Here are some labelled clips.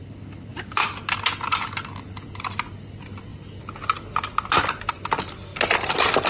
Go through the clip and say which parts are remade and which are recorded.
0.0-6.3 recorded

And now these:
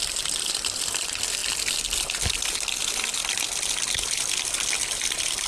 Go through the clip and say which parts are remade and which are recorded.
0.0-5.5 recorded

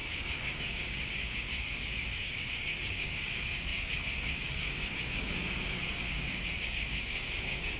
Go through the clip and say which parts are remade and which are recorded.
0.0-7.8 remade